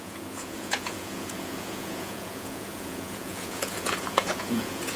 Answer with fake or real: fake